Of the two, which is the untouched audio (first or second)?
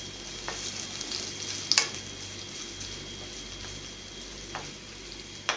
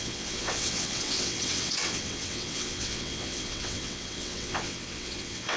first